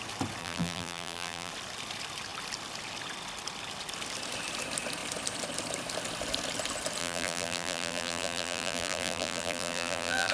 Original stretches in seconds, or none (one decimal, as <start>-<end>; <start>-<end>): 0.0-0.4; 1.5-7.0